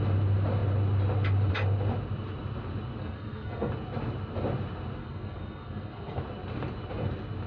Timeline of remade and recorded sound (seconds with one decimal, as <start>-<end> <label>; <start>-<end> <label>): 0.0-3.0 recorded; 3.0-3.7 remade; 3.7-5.0 recorded; 5.0-6.2 remade; 6.2-7.5 recorded